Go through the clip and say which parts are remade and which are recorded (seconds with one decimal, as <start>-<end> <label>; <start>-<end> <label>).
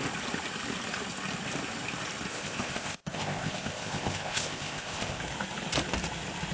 0.0-2.3 recorded; 2.3-5.2 remade; 5.2-6.5 recorded